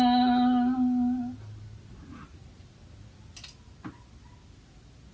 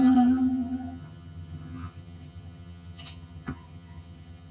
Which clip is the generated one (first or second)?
second